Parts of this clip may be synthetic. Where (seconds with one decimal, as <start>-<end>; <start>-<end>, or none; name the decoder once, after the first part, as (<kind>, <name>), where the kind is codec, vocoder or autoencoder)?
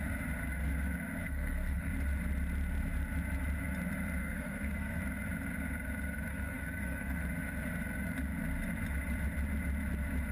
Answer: 1.2-1.9 (codec, SNAC); 4.2-5.0; 6.3-7.2